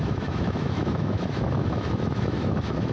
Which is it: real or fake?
fake